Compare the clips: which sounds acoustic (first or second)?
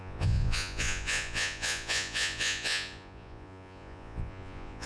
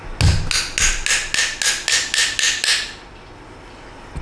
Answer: second